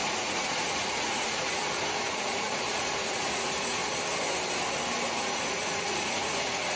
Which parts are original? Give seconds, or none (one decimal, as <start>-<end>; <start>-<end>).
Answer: 1.6-2.1; 3.8-5.1